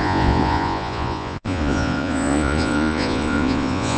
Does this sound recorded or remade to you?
remade